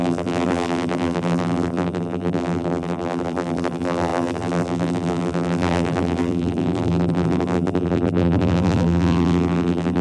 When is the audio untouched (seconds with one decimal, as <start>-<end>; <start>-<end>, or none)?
none